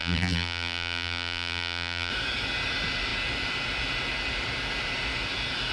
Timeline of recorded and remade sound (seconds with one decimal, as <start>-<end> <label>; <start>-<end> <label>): 0.0-2.1 remade; 2.1-5.7 recorded